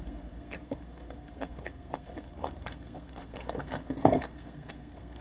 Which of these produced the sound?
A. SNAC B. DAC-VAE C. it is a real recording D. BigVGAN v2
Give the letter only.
A